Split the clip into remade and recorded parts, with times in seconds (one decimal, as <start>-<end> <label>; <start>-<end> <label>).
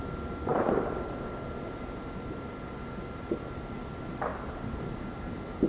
0.0-5.7 recorded